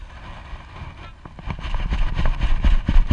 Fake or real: real